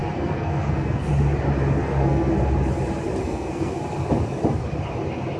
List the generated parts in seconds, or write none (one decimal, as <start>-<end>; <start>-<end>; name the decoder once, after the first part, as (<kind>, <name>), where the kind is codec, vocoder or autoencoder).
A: 0.0-1.1 (codec, SNAC); 1.8-2.3; 3.2-3.8